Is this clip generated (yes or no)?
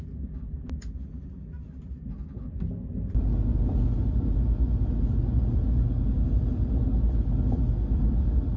no